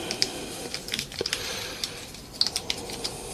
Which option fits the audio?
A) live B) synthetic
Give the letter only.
A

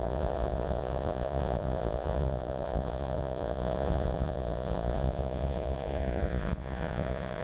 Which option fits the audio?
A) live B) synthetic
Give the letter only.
B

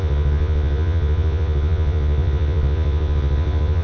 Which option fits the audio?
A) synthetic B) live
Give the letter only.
A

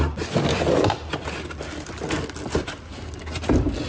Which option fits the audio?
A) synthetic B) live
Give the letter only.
B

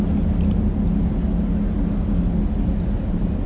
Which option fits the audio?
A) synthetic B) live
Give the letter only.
B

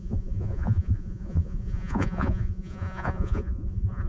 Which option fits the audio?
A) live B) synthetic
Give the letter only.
B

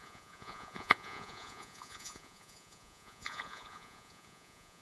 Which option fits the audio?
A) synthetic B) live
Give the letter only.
A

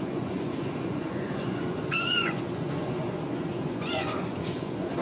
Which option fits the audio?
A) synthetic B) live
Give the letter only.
A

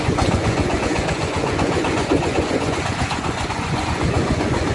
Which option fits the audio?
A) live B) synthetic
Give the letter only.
B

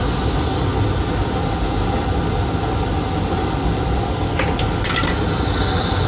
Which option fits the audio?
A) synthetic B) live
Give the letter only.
B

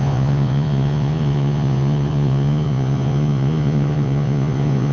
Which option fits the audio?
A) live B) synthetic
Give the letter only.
B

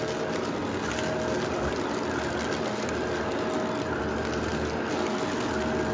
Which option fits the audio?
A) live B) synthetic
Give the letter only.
A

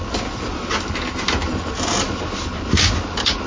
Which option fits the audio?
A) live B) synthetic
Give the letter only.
A